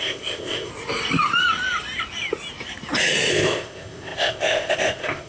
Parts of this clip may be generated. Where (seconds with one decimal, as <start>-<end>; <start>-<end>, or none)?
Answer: 0.0-0.7; 3.3-5.3